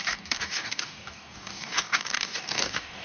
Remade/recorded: remade